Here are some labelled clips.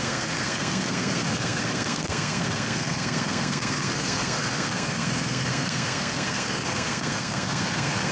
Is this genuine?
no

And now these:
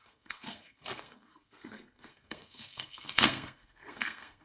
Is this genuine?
no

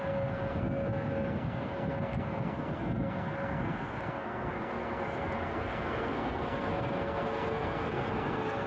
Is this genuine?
no